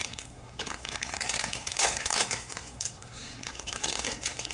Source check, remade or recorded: remade